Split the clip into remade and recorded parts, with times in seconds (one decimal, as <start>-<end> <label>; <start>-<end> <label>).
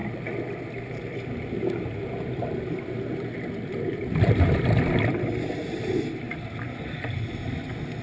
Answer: 0.0-4.7 remade; 4.7-8.0 recorded